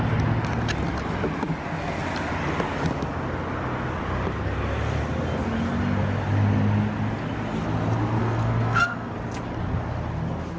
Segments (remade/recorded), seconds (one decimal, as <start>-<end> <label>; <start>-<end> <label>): 0.0-8.2 recorded; 8.2-9.1 remade; 9.1-10.6 recorded

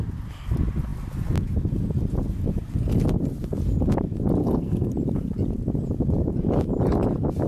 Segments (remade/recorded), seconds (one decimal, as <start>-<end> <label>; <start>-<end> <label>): 0.0-4.4 recorded; 4.4-4.9 remade; 4.9-7.5 recorded